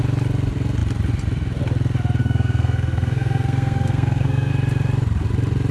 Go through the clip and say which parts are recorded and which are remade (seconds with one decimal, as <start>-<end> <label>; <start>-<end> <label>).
0.0-2.2 recorded; 2.2-4.5 remade; 4.5-5.7 recorded